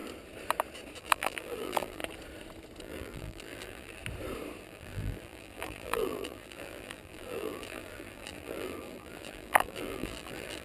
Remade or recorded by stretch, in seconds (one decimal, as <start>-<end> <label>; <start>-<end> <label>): 0.0-1.0 recorded; 1.0-2.0 remade; 2.0-2.8 recorded; 2.8-4.0 remade; 4.0-4.6 recorded; 4.6-10.6 remade